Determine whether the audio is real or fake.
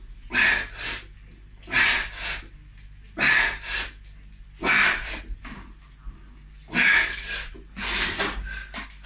real